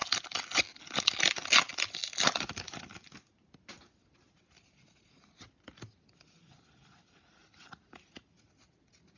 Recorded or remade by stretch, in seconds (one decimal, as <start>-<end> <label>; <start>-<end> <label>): 0.0-9.2 recorded